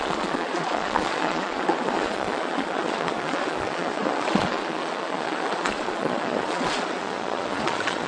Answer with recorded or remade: remade